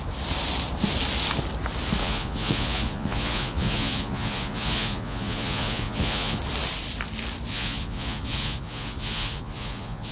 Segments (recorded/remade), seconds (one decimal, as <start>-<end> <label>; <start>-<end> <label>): 0.0-2.0 recorded; 2.0-6.4 remade; 6.4-7.5 recorded; 7.5-10.1 remade